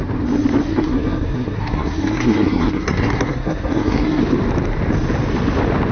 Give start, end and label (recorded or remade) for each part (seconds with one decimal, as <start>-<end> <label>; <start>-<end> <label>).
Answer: 0.0-0.7 recorded; 0.7-4.2 remade; 4.2-5.9 recorded